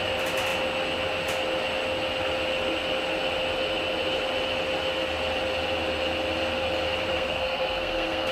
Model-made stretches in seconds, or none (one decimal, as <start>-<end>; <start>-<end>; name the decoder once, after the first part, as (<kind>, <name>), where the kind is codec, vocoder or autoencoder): 7.1-8.3 (codec, SNAC)